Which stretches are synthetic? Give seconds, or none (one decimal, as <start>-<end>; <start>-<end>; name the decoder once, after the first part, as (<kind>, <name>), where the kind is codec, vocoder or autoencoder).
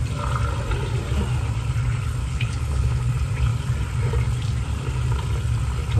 2.2-3.1 (codec, HILCodec)